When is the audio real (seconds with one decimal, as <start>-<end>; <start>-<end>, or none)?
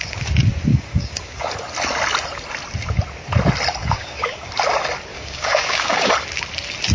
0.0-0.7; 1.5-3.8; 4.5-5.1; 6.1-6.9